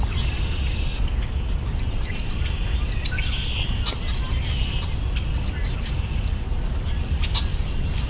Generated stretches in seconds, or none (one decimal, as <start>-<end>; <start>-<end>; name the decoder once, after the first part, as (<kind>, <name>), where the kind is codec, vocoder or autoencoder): none